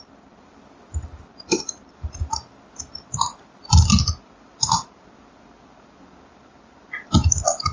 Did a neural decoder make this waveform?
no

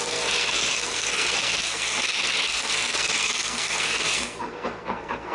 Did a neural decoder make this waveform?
yes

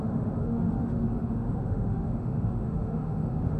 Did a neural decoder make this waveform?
yes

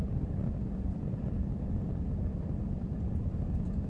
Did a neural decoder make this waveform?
no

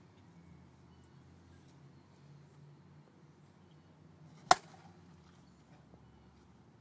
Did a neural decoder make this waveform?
no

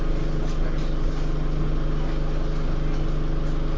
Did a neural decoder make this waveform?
no